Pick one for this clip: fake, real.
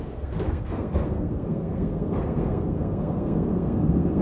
fake